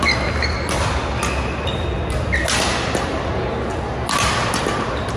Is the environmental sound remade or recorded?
recorded